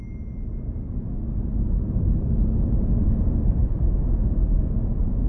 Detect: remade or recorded recorded